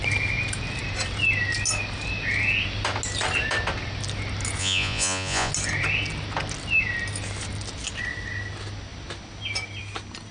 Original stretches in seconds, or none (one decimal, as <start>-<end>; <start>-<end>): 0.0-4.6; 5.5-10.3